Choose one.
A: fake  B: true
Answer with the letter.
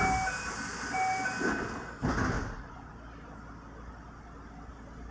B